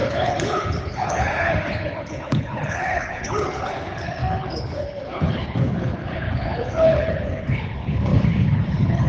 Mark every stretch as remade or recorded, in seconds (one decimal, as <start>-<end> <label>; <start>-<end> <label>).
0.0-9.1 remade